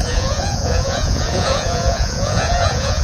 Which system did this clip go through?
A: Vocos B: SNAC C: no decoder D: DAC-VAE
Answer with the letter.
A